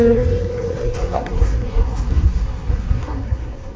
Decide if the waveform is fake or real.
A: fake